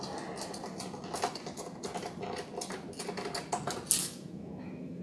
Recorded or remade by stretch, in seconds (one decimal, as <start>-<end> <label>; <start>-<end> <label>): 0.0-4.0 recorded; 4.0-5.0 remade